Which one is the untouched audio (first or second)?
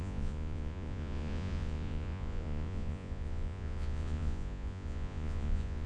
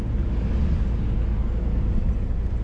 second